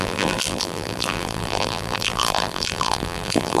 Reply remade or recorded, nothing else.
remade